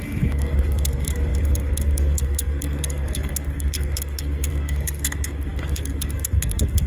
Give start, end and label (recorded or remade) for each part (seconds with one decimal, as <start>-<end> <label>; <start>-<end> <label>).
0.0-6.9 remade